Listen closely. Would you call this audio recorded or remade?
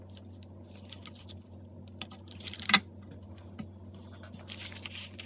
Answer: recorded